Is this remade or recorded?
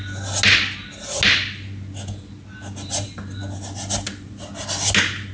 recorded